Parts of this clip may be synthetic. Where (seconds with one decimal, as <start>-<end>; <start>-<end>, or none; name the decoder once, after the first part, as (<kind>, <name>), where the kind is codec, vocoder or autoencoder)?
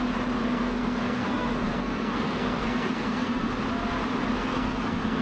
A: 0.4-3.5 (codec, SNAC); 4.4-5.2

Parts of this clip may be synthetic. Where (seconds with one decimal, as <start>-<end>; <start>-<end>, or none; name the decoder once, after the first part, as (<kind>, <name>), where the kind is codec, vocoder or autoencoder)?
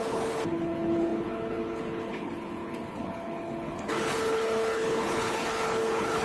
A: 0.0-6.2 (codec, HILCodec)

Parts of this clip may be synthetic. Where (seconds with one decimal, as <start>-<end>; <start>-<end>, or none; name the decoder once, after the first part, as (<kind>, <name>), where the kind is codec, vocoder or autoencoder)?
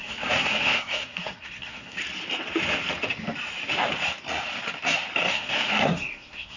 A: 0.0-2.0 (codec, SNAC); 5.3-6.6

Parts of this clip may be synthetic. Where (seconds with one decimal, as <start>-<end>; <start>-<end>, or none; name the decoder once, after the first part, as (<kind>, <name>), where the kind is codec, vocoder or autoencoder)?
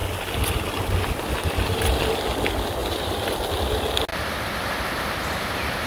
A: 0.0-1.3 (vocoder, BigVGAN v2); 2.8-3.6; 4.1-5.2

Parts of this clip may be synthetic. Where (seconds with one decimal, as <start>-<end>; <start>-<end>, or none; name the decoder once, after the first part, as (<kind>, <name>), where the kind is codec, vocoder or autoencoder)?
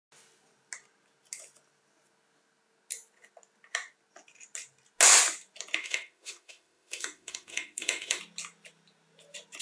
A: 5.8-8.2 (autoencoder, DAC-VAE)